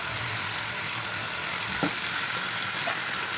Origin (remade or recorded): recorded